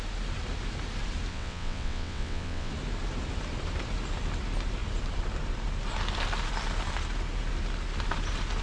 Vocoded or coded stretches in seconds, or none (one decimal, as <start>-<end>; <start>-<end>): 1.3-2.7